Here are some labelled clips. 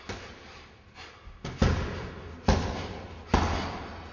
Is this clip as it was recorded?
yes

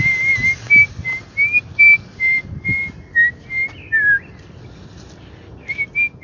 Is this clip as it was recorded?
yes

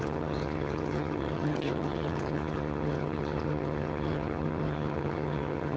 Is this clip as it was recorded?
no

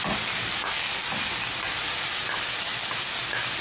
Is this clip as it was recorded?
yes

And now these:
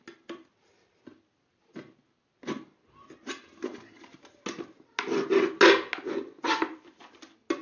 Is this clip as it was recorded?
yes